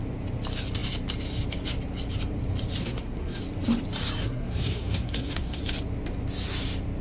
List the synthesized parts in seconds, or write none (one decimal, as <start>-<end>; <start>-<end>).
2.8-3.4; 4.2-5.6